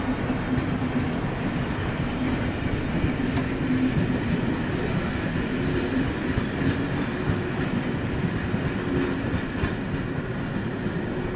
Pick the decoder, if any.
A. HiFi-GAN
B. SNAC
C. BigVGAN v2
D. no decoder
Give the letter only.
D